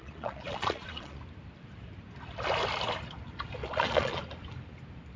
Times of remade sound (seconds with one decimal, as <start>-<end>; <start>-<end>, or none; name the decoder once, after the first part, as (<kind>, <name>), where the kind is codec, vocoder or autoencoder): 0.0-1.2 (vocoder, Vocos); 3.6-4.2